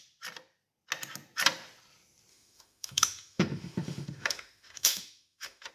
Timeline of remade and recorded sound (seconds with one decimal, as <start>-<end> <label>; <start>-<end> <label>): 0.0-2.3 recorded; 2.3-5.7 remade